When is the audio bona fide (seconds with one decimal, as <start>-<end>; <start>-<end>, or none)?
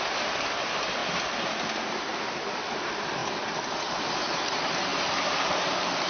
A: 1.0-1.9; 3.2-3.7